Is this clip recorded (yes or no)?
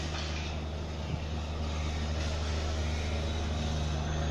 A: yes